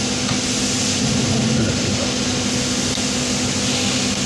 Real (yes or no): yes